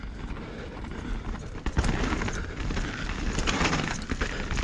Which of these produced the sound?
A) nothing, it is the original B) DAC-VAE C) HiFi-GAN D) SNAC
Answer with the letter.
A